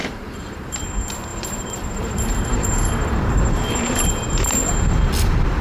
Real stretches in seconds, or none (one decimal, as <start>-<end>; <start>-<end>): 0.8-1.3; 4.7-5.6